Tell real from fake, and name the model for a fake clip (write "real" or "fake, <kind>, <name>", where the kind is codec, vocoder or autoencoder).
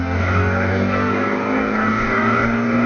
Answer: fake, codec, DAC